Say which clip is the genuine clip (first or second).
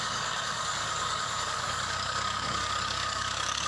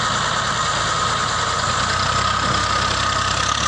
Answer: second